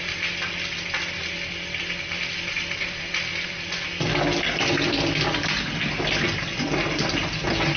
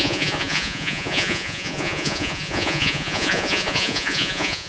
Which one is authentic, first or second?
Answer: first